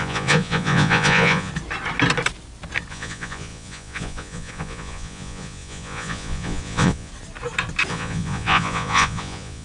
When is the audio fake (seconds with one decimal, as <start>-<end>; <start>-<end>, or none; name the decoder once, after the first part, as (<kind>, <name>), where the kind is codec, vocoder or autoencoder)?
0.0-1.5 (vocoder, Vocos); 2.9-7.1; 7.9-9.6

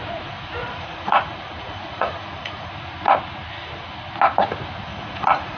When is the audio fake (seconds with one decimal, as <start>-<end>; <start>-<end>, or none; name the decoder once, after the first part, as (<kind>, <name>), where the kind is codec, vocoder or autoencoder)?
0.6-2.7 (vocoder, Vocos); 4.9-5.6

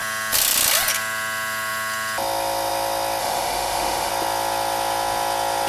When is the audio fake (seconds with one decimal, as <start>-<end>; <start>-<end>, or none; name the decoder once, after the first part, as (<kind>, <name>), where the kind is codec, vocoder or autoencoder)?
3.2-4.1 (autoencoder, DAC-VAE)